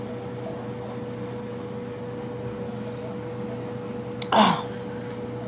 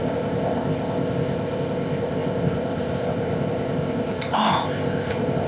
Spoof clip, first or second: second